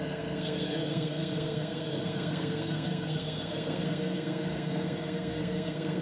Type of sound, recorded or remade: remade